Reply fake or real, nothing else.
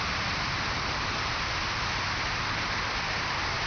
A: fake